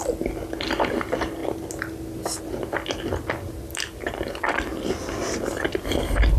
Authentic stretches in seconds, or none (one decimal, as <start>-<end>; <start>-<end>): 0.0-6.4